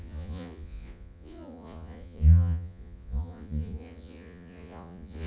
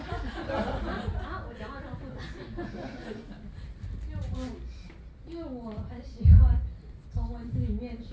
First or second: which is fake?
first